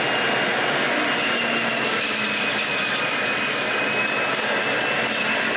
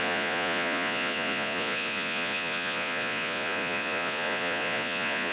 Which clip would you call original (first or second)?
first